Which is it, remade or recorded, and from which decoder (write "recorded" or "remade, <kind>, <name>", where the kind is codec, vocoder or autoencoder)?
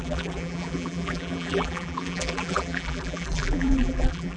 remade, vocoder, BigVGAN v2